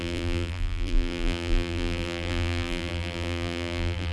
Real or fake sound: fake